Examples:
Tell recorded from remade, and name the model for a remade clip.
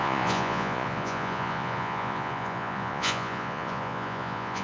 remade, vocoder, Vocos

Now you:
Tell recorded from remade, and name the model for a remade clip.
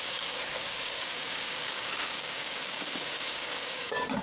remade, codec, DAC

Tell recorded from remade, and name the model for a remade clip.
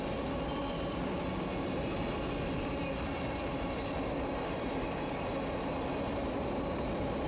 recorded